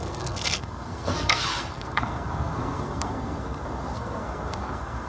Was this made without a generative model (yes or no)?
no